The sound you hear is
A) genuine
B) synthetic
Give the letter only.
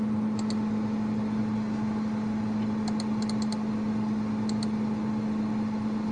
A